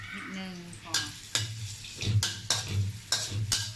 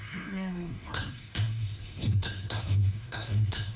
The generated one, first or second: second